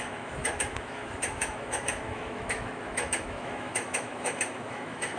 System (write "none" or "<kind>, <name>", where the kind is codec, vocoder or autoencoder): autoencoder, DAC-VAE